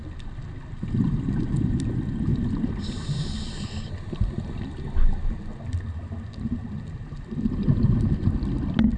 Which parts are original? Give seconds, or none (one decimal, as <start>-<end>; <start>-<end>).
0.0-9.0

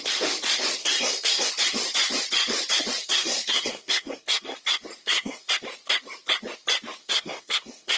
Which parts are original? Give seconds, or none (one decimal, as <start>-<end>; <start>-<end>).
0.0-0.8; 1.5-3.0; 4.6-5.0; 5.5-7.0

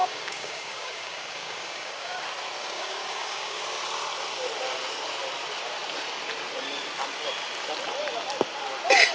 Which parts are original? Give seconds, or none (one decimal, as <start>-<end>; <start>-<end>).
2.2-2.6; 3.6-9.1

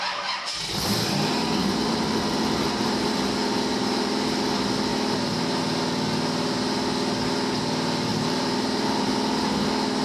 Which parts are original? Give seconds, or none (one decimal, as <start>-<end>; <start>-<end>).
0.0-1.6; 4.4-4.9; 5.6-8.1; 9.1-10.0